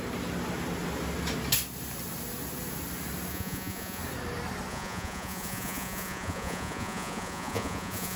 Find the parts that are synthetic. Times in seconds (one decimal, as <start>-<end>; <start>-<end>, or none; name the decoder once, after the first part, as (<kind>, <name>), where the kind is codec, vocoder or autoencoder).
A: 3.3-4.0 (vocoder, Vocos); 4.7-8.2